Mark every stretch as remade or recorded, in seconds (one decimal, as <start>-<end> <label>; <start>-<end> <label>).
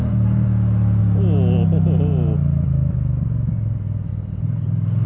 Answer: 0.0-5.1 recorded